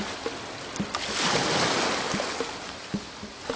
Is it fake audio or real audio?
real